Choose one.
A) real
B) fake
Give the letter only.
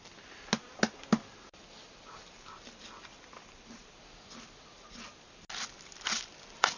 A